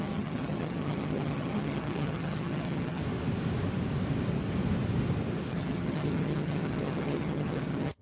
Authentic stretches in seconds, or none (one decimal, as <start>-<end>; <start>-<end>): 3.0-5.5